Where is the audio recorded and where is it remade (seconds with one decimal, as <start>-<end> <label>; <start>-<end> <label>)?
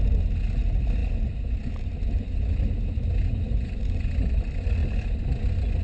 0.0-5.8 recorded